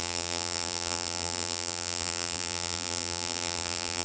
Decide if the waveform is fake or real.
fake